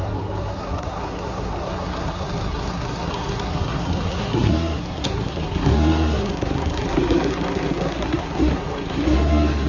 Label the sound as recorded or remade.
remade